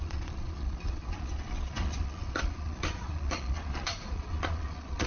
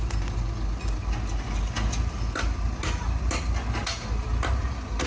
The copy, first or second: first